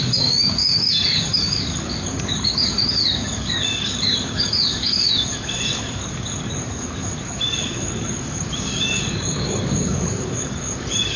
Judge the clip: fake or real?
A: fake